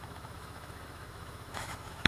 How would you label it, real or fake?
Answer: fake